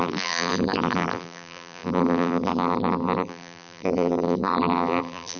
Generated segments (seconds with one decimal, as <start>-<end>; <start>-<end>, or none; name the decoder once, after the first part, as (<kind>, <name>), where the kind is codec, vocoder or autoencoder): 0.0-5.4 (vocoder, BigVGAN v2)